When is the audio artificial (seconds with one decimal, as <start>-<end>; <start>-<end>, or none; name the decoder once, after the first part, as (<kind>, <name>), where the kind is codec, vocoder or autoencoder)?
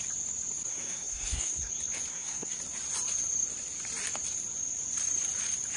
0.7-1.7 (codec, SNAC); 2.1-2.6